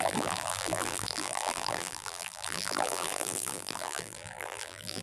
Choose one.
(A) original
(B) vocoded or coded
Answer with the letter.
B